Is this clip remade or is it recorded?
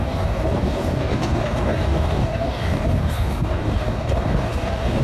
remade